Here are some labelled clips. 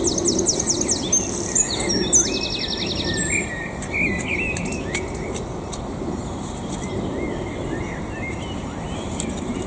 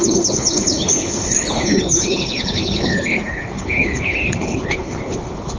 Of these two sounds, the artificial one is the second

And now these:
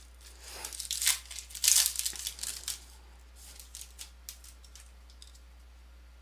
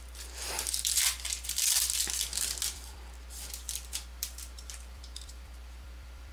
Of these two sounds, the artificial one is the second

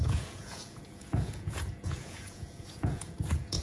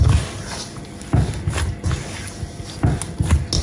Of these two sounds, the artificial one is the first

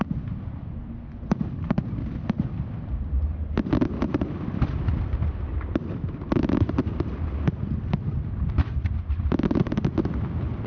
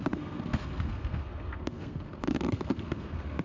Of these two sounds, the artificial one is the second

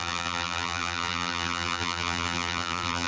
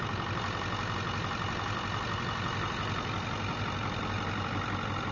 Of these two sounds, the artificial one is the first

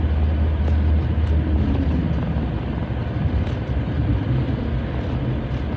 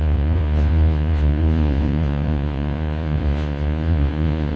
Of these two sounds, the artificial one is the second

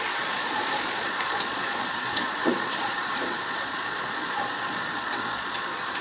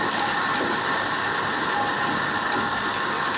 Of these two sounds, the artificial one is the first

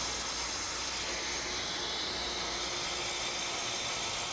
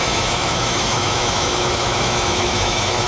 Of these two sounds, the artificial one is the second